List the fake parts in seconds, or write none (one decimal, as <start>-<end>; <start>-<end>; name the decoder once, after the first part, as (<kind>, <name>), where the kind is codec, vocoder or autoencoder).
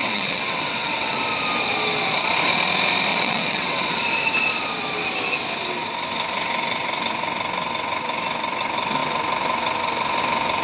0.0-1.2 (vocoder, WaveNeXt); 3.1-4.0